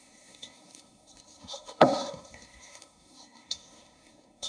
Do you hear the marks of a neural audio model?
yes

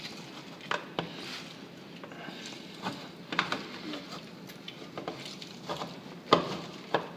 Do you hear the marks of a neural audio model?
no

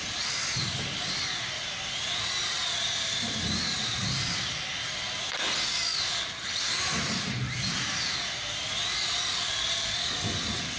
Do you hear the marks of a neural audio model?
no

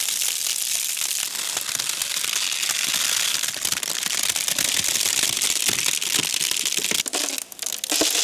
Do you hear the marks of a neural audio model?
no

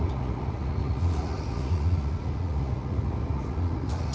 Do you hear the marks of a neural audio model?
yes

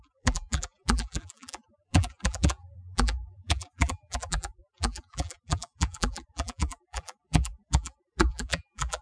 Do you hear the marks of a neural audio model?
yes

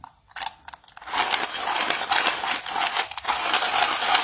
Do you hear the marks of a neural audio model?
no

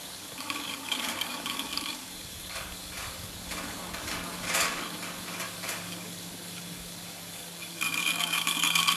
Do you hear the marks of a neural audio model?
yes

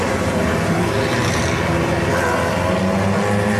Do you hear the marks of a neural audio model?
no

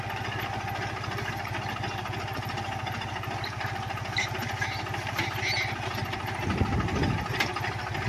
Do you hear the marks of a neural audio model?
no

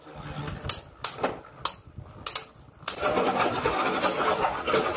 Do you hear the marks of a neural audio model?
no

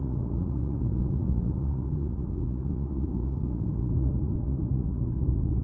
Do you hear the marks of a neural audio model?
yes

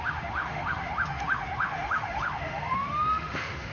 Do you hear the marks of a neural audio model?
yes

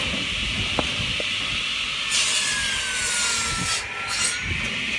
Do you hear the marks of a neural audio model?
no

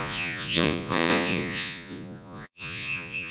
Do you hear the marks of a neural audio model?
yes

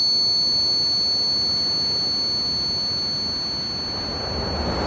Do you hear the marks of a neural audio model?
no